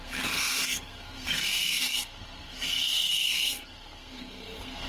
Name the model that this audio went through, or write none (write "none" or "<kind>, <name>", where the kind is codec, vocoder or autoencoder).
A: codec, SNAC